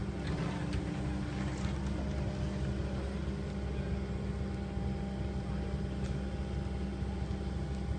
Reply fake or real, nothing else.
real